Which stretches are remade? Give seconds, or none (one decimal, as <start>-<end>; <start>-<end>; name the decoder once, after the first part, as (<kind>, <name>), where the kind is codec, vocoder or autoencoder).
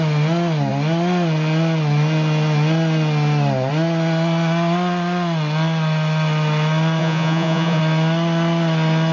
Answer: 7.0-7.8 (vocoder, Vocos)